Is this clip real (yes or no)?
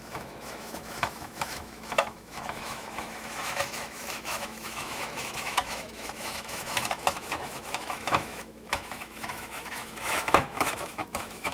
no